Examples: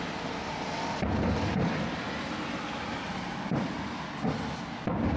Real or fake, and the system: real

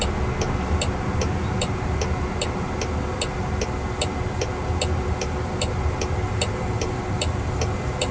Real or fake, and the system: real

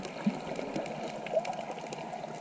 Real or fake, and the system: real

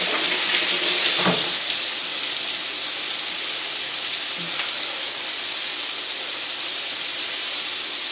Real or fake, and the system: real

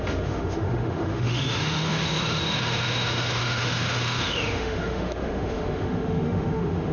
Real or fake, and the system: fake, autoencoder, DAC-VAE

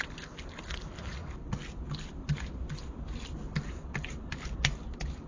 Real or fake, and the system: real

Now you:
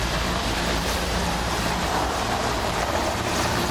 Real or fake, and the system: fake, vocoder, BigVGAN v2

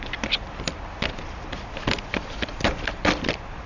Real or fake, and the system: fake, vocoder, BigVGAN v2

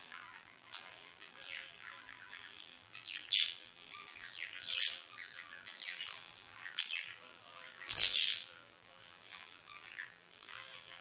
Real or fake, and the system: fake, vocoder, BigVGAN v2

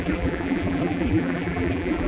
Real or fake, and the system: fake, vocoder, BigVGAN v2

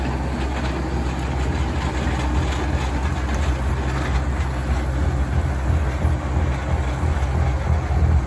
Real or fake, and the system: real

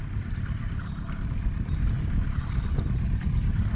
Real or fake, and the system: fake, vocoder, BigVGAN v2